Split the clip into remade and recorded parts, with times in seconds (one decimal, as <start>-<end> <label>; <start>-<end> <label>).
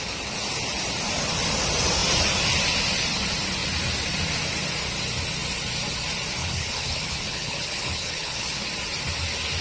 0.0-6.4 recorded; 6.4-8.7 remade; 8.7-9.6 recorded